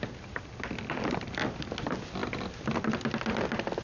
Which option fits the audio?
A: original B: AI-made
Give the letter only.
A